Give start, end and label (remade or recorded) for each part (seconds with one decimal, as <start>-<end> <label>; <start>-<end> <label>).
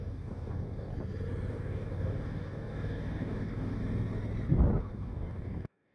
0.0-0.9 remade; 0.9-1.5 recorded; 1.5-3.8 remade; 3.8-4.8 recorded; 4.8-5.9 remade